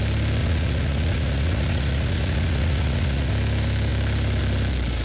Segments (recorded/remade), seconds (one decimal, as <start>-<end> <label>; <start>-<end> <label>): 0.0-0.4 recorded; 0.4-3.3 remade; 3.3-5.0 recorded